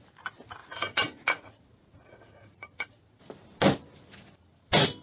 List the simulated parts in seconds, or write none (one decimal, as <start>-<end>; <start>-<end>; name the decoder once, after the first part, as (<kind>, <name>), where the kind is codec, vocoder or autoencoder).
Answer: 0.6-2.9 (vocoder, Vocos)